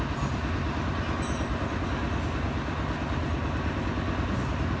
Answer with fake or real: real